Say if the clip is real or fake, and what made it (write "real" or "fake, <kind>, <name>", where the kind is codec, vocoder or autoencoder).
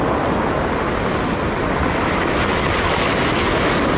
real